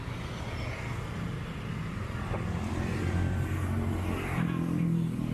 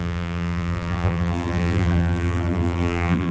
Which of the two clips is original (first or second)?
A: first